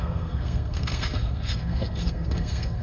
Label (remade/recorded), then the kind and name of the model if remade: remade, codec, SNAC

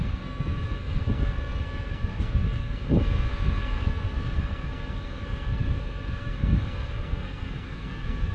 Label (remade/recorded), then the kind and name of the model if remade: remade, codec, SNAC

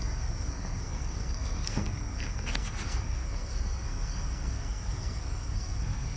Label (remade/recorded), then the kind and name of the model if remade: remade, codec, SNAC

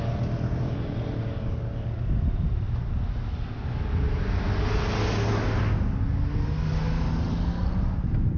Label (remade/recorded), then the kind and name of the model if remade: recorded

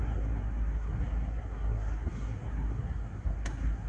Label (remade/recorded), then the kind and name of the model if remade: remade, codec, SNAC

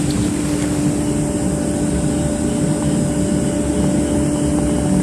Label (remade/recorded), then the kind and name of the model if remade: recorded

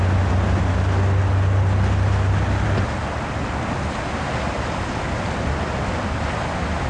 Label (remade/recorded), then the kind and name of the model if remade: recorded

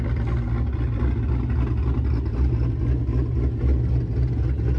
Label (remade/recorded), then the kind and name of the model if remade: recorded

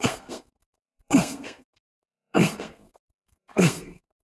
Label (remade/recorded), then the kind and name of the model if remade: remade, codec, SNAC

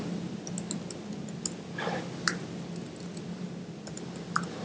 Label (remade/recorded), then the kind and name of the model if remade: recorded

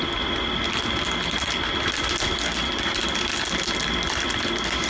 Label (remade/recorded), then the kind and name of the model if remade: recorded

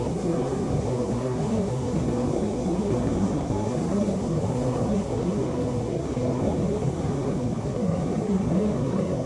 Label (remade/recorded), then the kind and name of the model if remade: remade, codec, SNAC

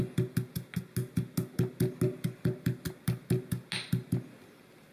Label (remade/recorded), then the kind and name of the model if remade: recorded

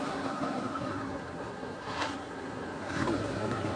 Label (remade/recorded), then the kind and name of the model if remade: remade, codec, SNAC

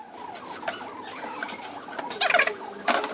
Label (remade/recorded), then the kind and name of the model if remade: recorded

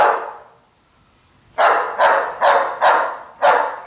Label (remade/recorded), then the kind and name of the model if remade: recorded